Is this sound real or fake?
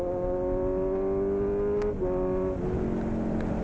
real